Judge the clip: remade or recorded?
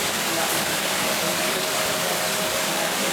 remade